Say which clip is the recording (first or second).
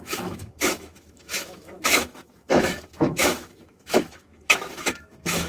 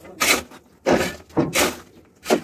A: second